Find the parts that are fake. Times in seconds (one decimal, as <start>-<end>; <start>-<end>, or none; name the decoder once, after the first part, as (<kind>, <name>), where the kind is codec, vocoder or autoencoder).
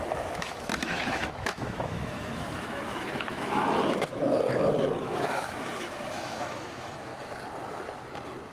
0.0-4.2 (autoencoder, DAC-VAE); 5.0-7.1